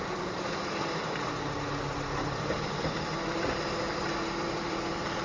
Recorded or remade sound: remade